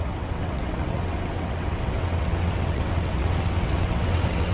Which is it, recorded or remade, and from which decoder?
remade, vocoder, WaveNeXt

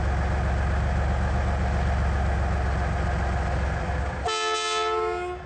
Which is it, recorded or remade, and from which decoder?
recorded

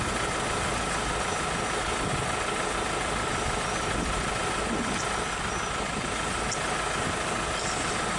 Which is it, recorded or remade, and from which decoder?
recorded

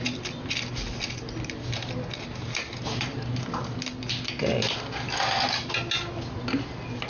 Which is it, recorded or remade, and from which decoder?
recorded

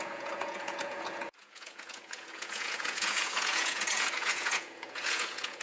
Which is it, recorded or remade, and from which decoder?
remade, vocoder, Vocos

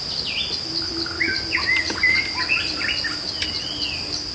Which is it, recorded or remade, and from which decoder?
recorded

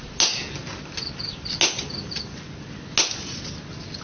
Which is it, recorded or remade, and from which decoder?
recorded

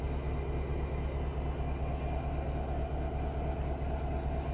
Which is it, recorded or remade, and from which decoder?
recorded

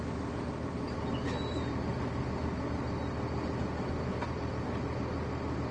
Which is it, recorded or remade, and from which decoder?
recorded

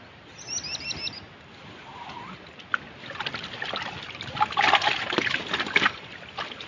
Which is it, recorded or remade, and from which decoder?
recorded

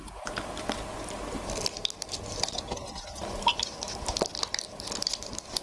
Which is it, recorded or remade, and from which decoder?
recorded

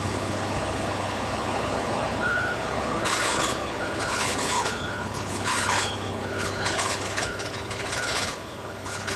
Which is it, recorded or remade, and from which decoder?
remade, codec, HILCodec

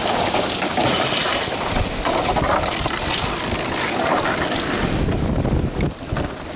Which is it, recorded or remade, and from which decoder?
recorded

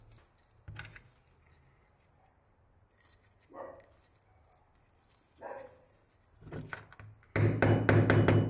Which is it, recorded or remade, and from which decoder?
recorded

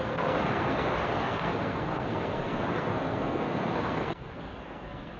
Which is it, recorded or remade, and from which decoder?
remade, codec, SNAC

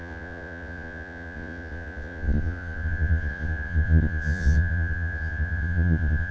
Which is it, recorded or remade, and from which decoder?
remade, vocoder, Vocos